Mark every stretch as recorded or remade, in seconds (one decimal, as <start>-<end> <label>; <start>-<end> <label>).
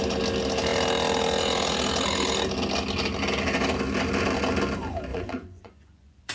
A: 0.0-5.1 recorded; 5.1-6.3 remade